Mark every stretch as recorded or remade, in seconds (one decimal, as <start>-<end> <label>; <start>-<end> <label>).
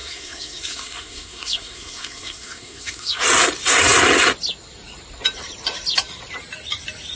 0.0-3.2 remade; 3.2-7.2 recorded